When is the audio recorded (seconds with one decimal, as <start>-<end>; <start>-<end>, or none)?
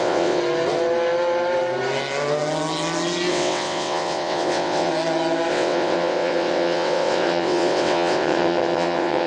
0.4-3.3; 4.9-5.5